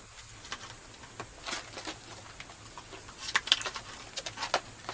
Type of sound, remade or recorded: recorded